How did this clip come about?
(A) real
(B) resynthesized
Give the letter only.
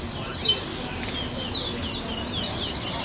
A